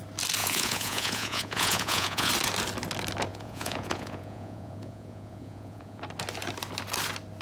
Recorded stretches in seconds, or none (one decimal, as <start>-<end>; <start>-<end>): 0.0-0.4; 2.3-3.3; 6.0-7.4